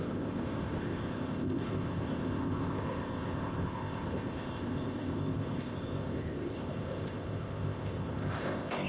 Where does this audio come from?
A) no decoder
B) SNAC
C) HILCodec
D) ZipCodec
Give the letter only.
D